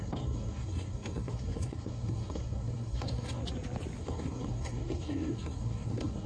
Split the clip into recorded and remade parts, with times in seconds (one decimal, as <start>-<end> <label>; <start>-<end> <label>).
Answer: 0.0-3.4 remade; 3.4-4.0 recorded; 4.0-6.3 remade